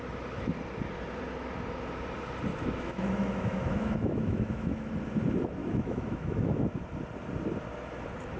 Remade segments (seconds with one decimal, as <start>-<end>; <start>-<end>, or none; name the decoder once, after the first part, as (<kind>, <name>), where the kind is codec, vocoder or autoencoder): 2.5-4.9 (autoencoder, DAC-VAE); 5.6-6.8